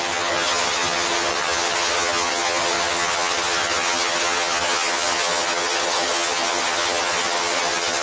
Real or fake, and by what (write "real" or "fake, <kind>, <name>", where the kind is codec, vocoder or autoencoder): fake, vocoder, HiFi-GAN